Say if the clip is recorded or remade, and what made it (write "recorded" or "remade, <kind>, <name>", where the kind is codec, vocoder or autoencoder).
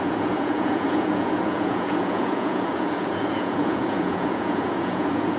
remade, vocoder, Vocos